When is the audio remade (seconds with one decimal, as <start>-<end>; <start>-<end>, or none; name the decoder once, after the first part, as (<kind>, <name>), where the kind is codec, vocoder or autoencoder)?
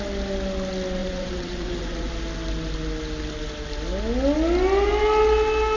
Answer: 1.0-2.1 (vocoder, Vocos)